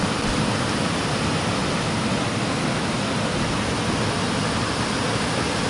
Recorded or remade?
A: recorded